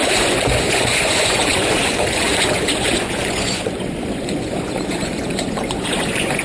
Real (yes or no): no